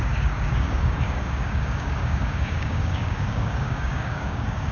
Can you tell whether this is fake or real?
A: fake